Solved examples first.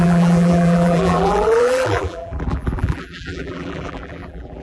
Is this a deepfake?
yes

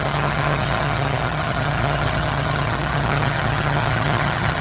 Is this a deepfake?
yes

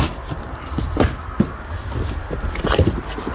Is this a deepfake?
no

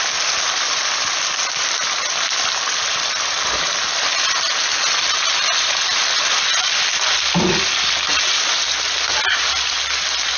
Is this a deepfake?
no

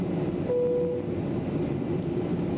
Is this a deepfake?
no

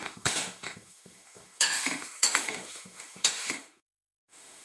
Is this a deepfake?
yes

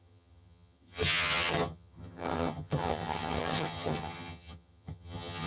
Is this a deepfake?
yes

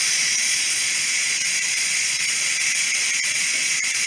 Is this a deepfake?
yes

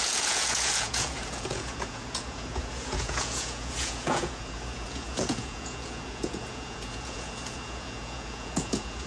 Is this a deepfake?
yes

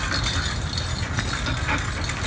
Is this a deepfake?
no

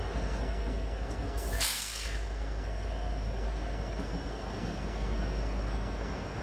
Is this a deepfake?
yes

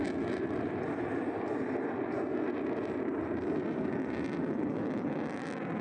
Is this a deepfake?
no